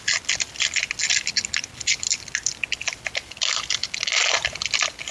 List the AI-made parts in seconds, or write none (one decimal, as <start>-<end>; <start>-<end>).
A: none

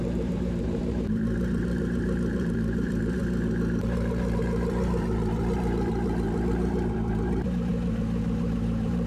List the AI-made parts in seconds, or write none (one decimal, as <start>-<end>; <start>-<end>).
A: 0.0-3.2; 3.8-7.7; 8.4-9.1